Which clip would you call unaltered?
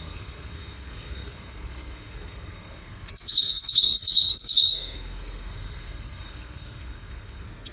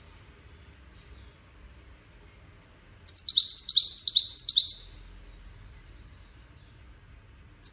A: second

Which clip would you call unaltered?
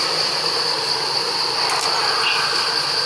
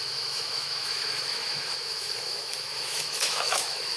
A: first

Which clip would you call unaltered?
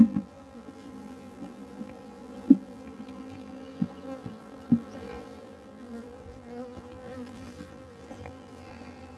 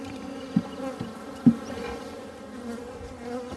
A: second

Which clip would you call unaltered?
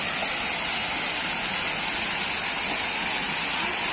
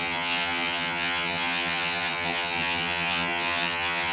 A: first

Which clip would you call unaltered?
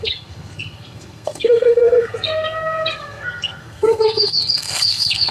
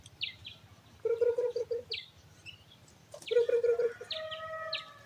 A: second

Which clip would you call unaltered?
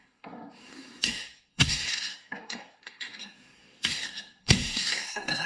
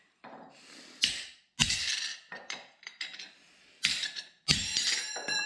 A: second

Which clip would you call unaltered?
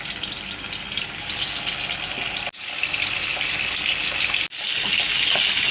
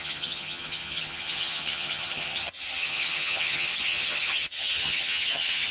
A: first